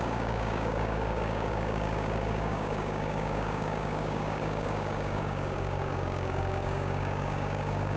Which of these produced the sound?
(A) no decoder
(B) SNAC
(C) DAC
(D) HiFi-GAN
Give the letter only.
C